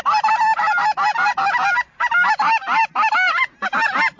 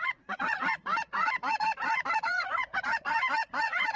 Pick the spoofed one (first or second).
second